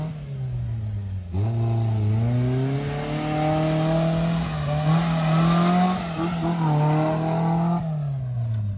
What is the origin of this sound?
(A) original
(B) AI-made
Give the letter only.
A